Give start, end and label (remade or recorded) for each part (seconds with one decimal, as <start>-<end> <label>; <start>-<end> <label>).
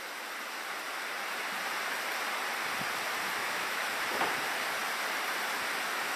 0.0-3.4 recorded; 3.4-4.0 remade; 4.0-6.2 recorded